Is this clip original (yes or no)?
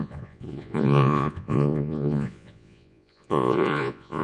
no